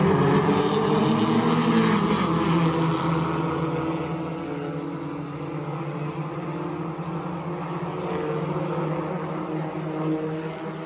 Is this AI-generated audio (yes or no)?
no